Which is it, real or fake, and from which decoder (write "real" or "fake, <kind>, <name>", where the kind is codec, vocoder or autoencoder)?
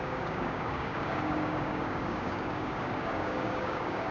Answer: fake, codec, DAC